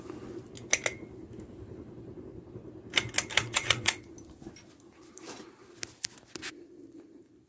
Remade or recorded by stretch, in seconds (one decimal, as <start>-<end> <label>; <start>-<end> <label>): 0.0-3.4 recorded; 3.4-4.1 remade; 4.1-7.5 recorded